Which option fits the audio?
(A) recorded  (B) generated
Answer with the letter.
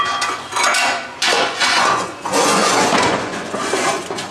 B